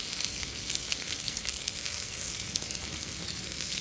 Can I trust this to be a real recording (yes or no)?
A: no